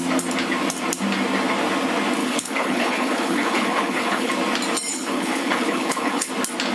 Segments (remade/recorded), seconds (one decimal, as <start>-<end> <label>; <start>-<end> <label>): 0.0-2.2 recorded; 2.2-4.3 remade; 4.3-4.9 recorded; 4.9-6.3 remade; 6.3-6.7 recorded